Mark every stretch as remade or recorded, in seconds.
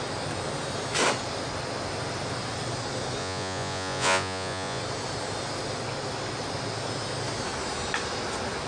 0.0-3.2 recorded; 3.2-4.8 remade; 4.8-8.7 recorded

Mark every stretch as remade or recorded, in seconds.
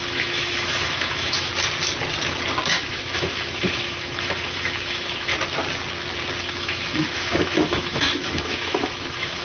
0.0-1.5 remade; 1.5-2.7 recorded; 2.7-5.3 remade; 5.3-6.4 recorded; 6.4-9.4 remade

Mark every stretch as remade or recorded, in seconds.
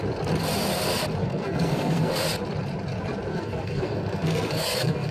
0.0-1.2 recorded; 1.2-2.1 remade; 2.1-3.3 recorded; 3.3-5.1 remade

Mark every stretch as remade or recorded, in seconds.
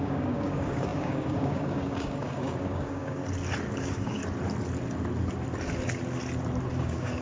0.0-3.2 remade; 3.2-3.8 recorded; 3.8-4.2 remade; 4.2-6.8 recorded; 6.8-7.2 remade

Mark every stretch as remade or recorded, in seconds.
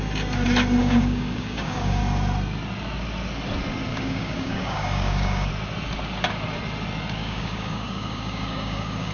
0.0-0.8 recorded; 0.8-2.0 remade; 2.0-3.9 recorded; 3.9-5.5 remade; 5.5-7.2 recorded; 7.2-9.1 remade